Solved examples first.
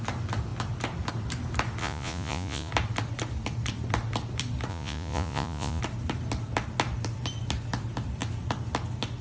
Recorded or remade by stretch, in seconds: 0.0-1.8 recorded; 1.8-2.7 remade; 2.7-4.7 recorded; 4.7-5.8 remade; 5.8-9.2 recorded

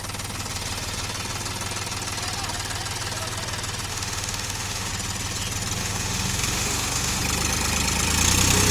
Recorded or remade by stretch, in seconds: 0.0-3.9 recorded; 3.9-4.9 remade; 4.9-5.8 recorded; 5.8-7.2 remade; 7.2-8.7 recorded

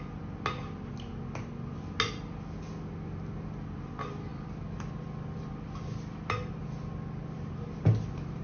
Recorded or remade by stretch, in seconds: 0.0-8.4 recorded

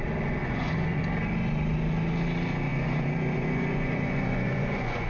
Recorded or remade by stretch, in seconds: 0.0-0.4 recorded; 0.4-1.0 remade; 1.0-2.7 recorded; 2.7-5.1 remade